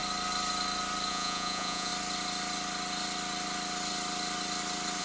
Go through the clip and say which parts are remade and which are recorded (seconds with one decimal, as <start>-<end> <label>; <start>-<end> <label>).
0.0-1.1 recorded; 1.1-1.9 remade; 1.9-5.0 recorded

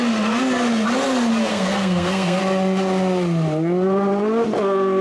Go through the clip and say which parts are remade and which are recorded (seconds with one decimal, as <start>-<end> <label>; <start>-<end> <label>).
0.0-1.5 recorded; 1.5-2.4 remade; 2.4-5.0 recorded

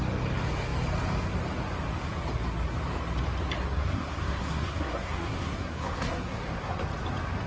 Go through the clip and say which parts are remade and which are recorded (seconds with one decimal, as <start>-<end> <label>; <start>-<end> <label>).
0.0-3.6 recorded; 3.6-6.7 remade; 6.7-7.5 recorded